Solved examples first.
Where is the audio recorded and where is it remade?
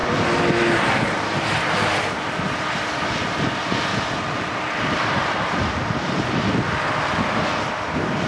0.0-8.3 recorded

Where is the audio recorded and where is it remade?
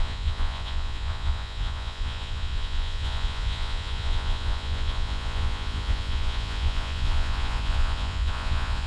0.0-8.9 remade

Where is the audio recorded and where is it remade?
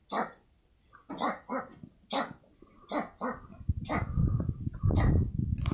0.0-5.7 recorded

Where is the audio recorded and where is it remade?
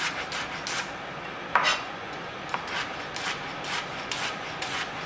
0.0-1.7 recorded; 1.7-2.4 remade; 2.4-3.9 recorded; 3.9-5.1 remade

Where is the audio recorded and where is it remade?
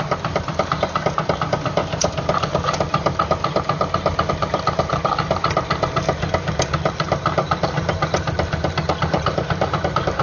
0.0-10.2 recorded